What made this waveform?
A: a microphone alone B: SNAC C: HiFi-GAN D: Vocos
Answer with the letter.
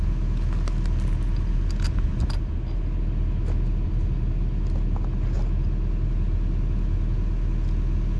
A